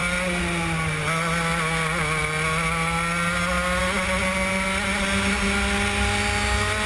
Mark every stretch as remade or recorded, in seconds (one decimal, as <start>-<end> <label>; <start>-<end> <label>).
0.0-6.9 recorded